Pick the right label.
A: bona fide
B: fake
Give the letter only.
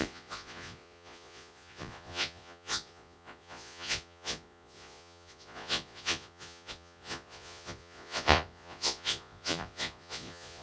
B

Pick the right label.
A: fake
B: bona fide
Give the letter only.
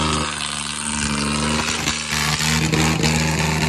B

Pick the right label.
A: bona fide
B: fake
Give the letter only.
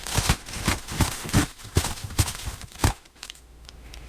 B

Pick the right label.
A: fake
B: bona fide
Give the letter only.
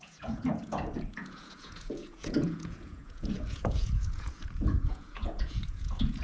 A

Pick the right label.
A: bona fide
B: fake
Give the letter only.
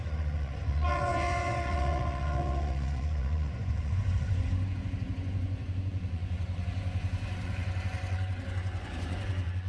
B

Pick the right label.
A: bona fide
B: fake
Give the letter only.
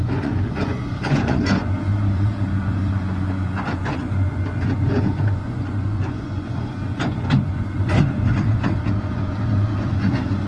B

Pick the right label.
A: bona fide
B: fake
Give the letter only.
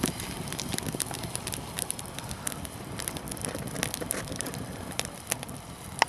A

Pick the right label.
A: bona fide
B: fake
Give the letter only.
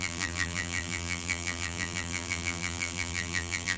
B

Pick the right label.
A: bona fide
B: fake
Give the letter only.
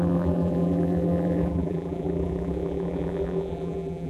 B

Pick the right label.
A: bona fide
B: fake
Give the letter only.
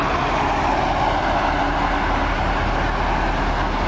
A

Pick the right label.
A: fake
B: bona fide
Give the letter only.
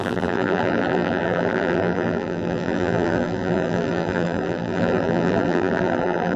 A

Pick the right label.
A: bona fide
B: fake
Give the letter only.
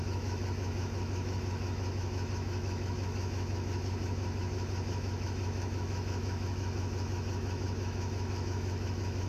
B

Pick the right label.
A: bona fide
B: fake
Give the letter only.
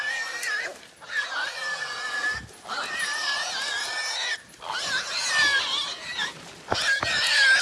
A